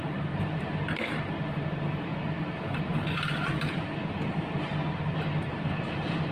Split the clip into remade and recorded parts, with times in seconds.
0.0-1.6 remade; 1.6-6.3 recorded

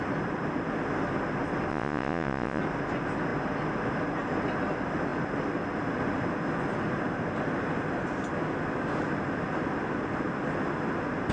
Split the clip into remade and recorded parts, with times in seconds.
0.0-1.7 recorded; 1.7-2.6 remade; 2.6-11.3 recorded